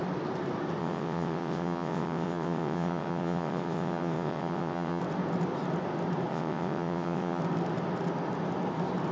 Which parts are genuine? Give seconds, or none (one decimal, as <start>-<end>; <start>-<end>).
0.0-0.8; 5.0-6.3; 7.4-9.1